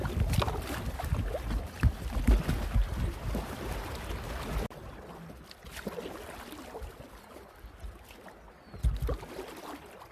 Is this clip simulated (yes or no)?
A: no